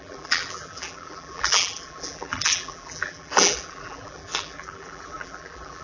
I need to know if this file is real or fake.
fake